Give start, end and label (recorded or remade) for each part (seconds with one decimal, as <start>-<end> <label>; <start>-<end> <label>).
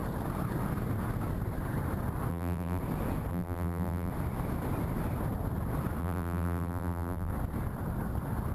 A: 0.0-2.3 recorded; 2.3-2.8 remade; 2.8-3.3 recorded; 3.3-4.1 remade; 4.1-6.0 recorded; 6.0-7.3 remade; 7.3-8.5 recorded